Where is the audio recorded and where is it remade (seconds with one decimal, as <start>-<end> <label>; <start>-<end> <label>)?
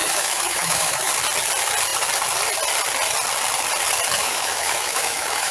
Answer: 0.0-1.1 remade; 1.1-4.2 recorded; 4.2-5.5 remade